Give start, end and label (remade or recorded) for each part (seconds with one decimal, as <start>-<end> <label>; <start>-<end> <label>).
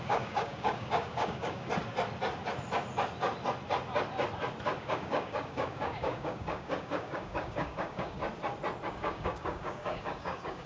0.0-1.7 remade; 1.7-4.8 recorded; 4.8-8.2 remade; 8.2-8.9 recorded; 8.9-10.7 remade